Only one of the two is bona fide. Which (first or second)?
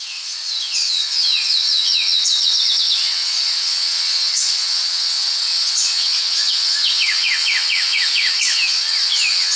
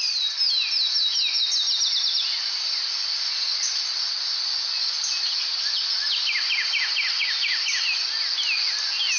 second